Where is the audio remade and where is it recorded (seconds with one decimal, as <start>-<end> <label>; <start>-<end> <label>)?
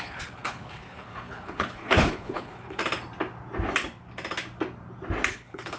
0.0-2.8 remade; 2.8-5.3 recorded; 5.3-5.8 remade